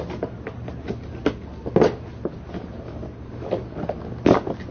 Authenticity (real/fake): real